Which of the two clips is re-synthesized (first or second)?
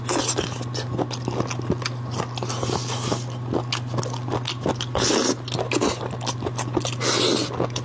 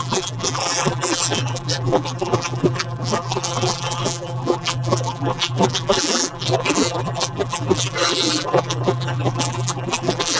second